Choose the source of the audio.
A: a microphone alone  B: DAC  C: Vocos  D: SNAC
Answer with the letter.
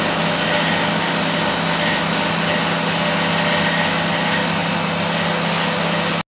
A